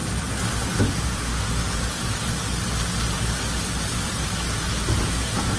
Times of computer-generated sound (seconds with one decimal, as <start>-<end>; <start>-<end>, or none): 0.8-1.3; 4.7-5.6